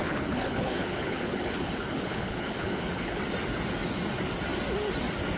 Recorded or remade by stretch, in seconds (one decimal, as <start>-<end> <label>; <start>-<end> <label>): 0.0-3.2 remade; 3.2-5.4 recorded